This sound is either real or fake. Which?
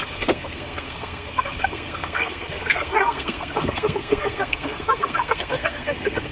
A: fake